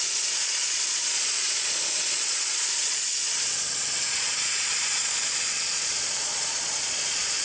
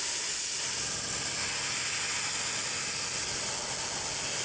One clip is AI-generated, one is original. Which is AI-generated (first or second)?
first